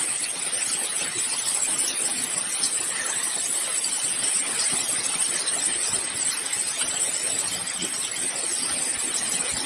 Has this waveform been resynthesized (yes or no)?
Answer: no